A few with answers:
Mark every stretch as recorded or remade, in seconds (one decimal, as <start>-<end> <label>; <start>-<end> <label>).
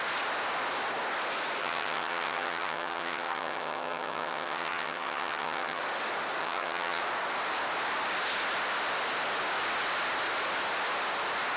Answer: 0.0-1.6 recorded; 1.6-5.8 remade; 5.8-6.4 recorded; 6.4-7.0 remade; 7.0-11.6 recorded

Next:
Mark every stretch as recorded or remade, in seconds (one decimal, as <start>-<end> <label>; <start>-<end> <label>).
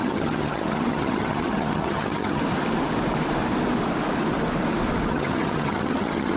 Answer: 0.0-2.4 remade; 2.4-5.1 recorded; 5.1-6.4 remade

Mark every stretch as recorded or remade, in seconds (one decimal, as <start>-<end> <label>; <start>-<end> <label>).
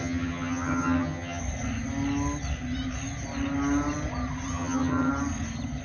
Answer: 0.0-1.4 remade; 1.4-4.5 recorded; 4.5-5.1 remade; 5.1-5.8 recorded